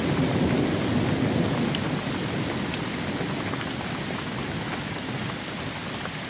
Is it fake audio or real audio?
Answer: real